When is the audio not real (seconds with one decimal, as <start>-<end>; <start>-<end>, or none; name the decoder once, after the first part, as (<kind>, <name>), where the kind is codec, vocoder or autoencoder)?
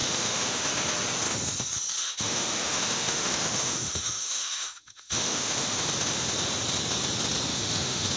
0.0-0.7 (autoencoder, DAC-VAE); 2.0-5.8; 7.5-8.2